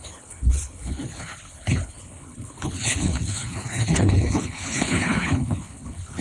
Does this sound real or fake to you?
fake